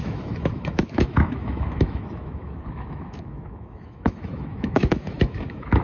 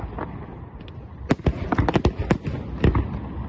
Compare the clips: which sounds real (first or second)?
second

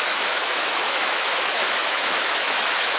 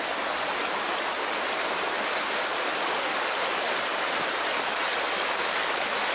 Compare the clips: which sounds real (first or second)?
second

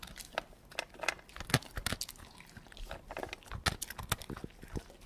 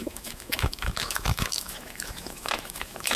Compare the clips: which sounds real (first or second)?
first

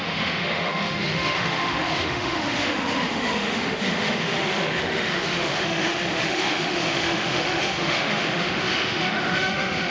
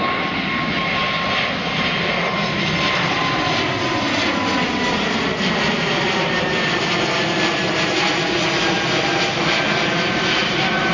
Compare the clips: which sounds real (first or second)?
second